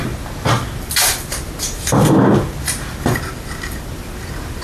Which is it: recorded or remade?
recorded